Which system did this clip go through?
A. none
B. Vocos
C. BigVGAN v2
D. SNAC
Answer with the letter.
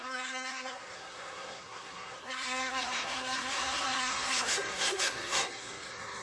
D